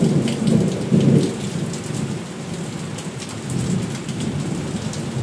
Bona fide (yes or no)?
yes